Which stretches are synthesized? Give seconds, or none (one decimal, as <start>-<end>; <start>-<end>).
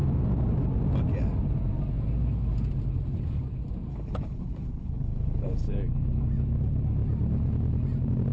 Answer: 3.9-5.6